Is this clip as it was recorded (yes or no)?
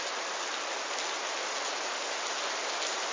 yes